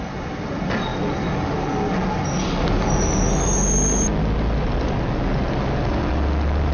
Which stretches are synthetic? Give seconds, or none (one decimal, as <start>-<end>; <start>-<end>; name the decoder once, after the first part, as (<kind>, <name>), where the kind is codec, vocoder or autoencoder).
none